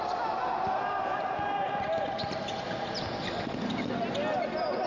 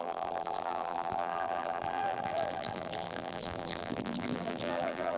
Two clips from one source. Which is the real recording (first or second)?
first